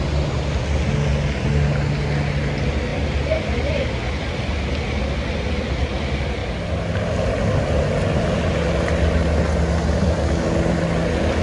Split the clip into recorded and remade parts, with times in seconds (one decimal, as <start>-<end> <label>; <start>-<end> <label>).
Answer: 0.0-2.9 recorded; 2.9-3.7 remade; 3.7-11.4 recorded

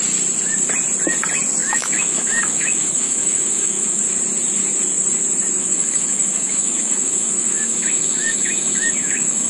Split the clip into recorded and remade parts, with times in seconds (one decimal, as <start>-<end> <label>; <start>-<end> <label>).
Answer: 0.0-1.6 recorded; 1.6-4.0 remade; 4.0-5.6 recorded; 5.6-9.5 remade

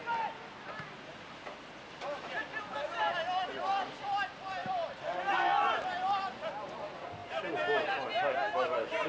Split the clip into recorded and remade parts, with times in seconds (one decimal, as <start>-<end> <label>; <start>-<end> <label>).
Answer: 0.0-9.1 recorded

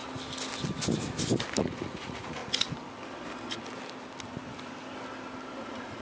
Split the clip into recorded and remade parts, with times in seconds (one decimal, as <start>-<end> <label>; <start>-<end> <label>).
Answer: 0.0-1.6 recorded; 1.6-2.4 remade; 2.4-5.6 recorded; 5.6-6.0 remade

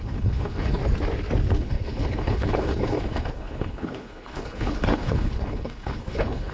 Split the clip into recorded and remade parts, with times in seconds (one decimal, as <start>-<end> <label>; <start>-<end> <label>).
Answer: 0.0-0.8 remade; 0.8-1.5 recorded; 1.5-6.5 remade

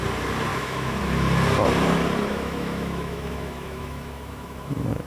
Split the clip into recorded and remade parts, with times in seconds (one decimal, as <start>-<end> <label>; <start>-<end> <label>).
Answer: 0.0-0.5 recorded; 0.5-1.0 remade; 1.0-2.3 recorded; 2.3-5.1 remade

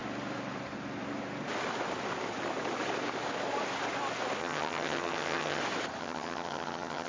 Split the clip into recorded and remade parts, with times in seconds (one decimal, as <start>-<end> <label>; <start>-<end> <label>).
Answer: 0.0-4.4 recorded; 4.4-5.6 remade; 5.6-6.0 recorded; 6.0-7.1 remade

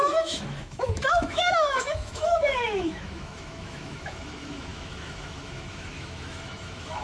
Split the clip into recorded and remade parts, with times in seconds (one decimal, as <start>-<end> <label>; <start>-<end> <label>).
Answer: 0.0-7.0 remade